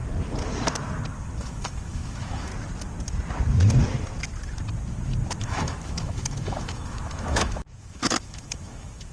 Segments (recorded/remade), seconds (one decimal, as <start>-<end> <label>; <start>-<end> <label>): 0.0-1.4 recorded; 1.4-2.5 remade; 2.5-5.4 recorded; 5.4-9.1 remade